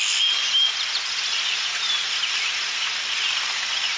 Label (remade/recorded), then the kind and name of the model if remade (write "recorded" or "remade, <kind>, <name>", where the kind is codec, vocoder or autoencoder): recorded